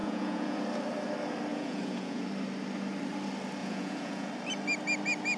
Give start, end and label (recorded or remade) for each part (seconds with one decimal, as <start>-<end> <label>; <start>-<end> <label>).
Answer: 0.0-0.6 remade; 0.6-1.5 recorded; 1.5-2.3 remade; 2.3-3.6 recorded; 3.6-4.3 remade; 4.3-5.4 recorded